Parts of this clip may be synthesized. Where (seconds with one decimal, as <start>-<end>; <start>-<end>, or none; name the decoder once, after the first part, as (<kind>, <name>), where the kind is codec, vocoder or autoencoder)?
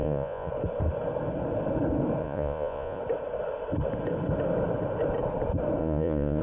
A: 0.0-0.5 (vocoder, Vocos); 2.2-3.0; 5.8-6.4